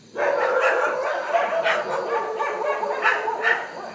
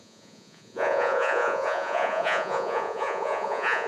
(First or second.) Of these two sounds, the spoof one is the second